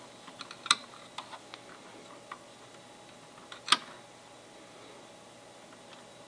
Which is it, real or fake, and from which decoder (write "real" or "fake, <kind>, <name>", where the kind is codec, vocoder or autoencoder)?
real